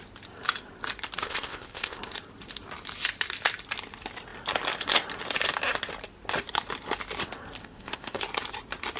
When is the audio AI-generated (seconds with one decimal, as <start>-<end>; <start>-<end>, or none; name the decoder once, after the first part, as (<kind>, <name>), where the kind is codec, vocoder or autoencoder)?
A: 1.2-2.0 (codec, ZipCodec); 7.6-8.2